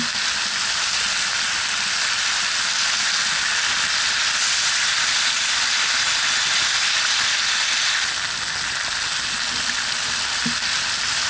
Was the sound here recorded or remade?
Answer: recorded